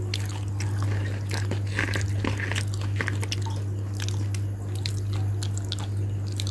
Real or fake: real